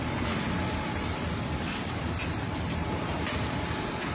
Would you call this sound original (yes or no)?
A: yes